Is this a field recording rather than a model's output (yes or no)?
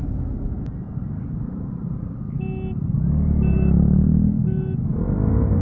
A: yes